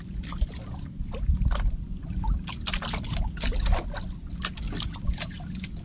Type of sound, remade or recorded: recorded